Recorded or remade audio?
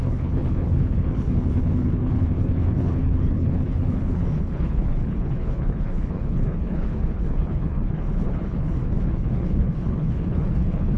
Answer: remade